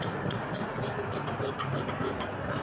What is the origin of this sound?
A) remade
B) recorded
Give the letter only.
B